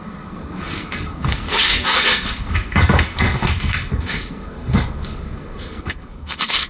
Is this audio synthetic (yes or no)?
yes